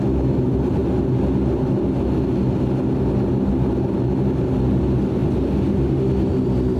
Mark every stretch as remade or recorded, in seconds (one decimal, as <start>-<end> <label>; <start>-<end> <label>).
0.0-6.8 recorded

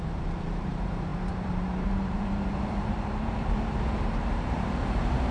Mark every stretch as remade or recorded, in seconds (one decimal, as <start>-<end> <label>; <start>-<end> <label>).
0.0-5.3 remade